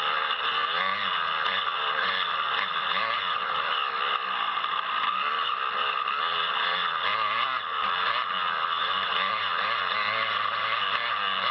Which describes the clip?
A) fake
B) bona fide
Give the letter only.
A